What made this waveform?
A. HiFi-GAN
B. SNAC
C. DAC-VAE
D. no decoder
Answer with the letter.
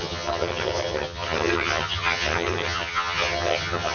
A